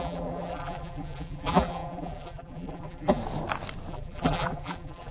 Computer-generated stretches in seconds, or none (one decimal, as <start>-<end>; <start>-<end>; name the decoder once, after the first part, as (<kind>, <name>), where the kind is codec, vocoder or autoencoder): 0.0-3.2 (vocoder, BigVGAN v2); 3.9-5.1